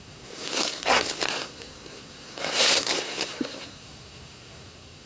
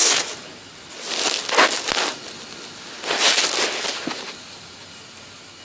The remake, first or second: first